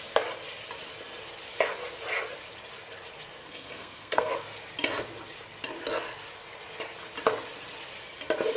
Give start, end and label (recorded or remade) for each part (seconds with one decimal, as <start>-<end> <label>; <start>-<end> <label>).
0.0-3.4 recorded; 3.4-4.3 remade; 4.3-8.6 recorded